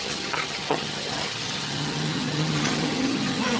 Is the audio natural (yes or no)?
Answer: no